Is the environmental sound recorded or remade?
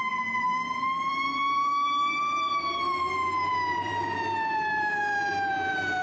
remade